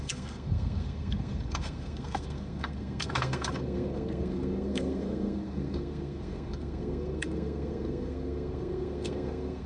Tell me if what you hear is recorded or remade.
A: remade